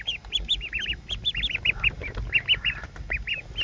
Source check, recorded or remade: recorded